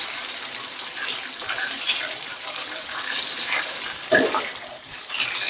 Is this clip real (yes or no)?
no